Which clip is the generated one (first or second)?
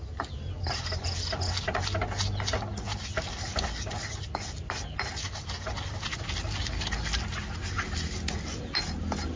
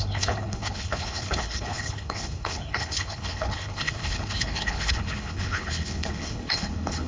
second